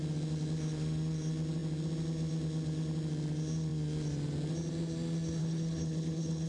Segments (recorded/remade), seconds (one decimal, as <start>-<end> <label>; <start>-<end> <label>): 0.0-5.4 recorded; 5.4-6.5 remade